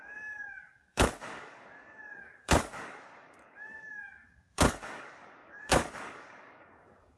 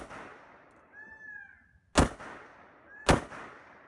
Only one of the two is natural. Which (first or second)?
second